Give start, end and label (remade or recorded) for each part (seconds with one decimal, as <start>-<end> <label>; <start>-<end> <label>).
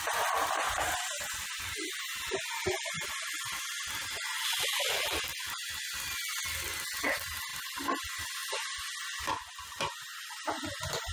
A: 0.0-11.1 recorded